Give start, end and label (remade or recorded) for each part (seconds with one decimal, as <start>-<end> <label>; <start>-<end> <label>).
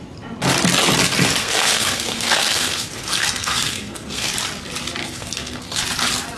0.0-1.4 recorded; 1.4-4.3 remade; 4.3-5.0 recorded; 5.0-5.8 remade; 5.8-6.4 recorded